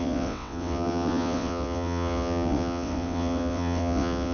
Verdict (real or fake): fake